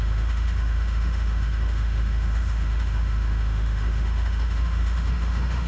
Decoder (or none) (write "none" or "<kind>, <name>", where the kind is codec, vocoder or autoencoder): autoencoder, DAC-VAE